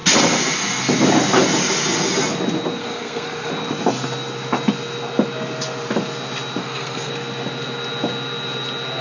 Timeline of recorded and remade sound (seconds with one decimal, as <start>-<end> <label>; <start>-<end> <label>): 0.0-2.8 recorded; 2.8-3.5 remade; 3.5-6.6 recorded; 6.6-7.1 remade; 7.1-9.0 recorded